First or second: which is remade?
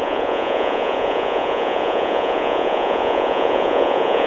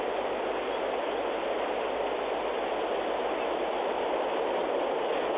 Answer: first